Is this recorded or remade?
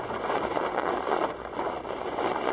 remade